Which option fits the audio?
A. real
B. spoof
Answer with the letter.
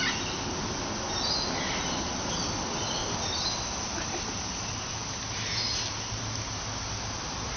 A